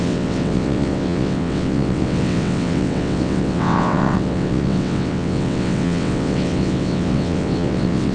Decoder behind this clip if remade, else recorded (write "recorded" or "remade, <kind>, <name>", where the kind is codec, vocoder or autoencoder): remade, vocoder, WaveNeXt